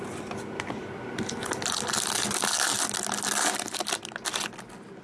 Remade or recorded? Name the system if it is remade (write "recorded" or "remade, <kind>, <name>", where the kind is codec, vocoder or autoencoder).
recorded